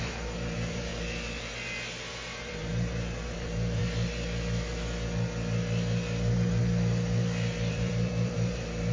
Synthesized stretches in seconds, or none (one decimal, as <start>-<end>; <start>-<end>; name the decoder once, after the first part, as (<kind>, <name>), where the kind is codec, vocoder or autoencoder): 0.0-0.9 (vocoder, BigVGAN v2); 2.1-3.8; 7.7-8.9